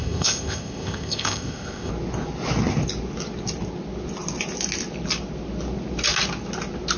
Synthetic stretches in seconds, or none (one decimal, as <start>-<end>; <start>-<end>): 0.0-1.9